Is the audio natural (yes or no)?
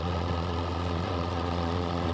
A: no